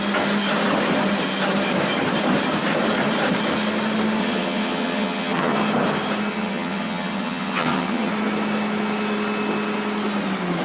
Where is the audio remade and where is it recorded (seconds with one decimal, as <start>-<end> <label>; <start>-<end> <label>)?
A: 0.0-4.2 recorded; 4.2-5.5 remade; 5.5-6.3 recorded; 6.3-8.1 remade; 8.1-10.6 recorded